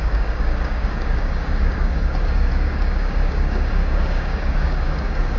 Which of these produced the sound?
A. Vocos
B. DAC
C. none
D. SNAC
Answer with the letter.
B